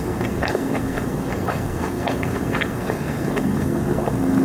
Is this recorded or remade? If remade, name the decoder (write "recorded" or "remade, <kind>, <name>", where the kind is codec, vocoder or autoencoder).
remade, codec, SNAC